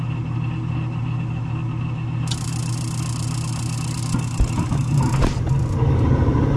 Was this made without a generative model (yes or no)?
yes